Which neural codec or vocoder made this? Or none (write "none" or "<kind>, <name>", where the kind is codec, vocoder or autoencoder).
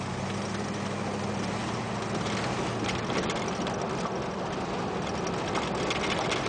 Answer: none